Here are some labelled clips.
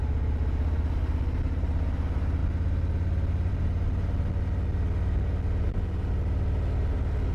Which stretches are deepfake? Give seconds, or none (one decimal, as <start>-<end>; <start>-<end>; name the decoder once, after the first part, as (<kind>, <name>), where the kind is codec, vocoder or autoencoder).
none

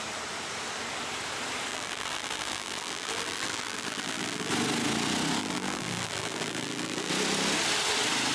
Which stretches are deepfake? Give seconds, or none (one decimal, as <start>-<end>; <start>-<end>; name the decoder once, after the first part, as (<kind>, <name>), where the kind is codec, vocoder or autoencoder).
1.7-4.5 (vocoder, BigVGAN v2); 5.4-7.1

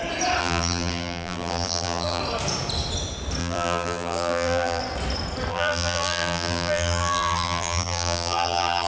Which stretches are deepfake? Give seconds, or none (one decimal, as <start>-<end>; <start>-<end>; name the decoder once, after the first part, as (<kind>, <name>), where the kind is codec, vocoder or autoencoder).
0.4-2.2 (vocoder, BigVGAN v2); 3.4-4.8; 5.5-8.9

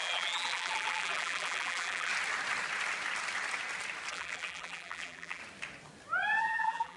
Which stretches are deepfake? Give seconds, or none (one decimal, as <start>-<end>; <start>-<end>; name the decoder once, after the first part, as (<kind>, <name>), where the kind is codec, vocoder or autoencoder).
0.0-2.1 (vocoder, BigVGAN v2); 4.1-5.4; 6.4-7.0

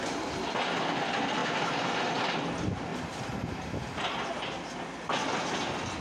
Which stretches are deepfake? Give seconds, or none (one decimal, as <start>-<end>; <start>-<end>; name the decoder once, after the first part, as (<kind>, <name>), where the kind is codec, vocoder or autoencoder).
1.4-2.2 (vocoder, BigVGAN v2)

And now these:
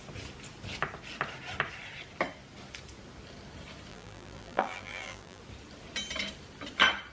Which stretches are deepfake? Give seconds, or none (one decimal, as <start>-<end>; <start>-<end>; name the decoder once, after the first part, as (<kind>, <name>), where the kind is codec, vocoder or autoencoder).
3.9-5.4 (vocoder, BigVGAN v2)